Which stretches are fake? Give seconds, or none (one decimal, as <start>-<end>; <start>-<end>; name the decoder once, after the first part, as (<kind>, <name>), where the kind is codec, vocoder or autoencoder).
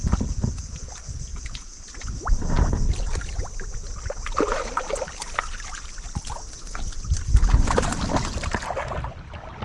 0.0-0.9 (vocoder, Vocos); 1.3-1.8